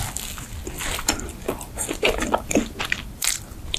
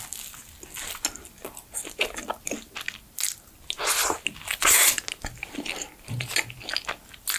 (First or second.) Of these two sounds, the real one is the second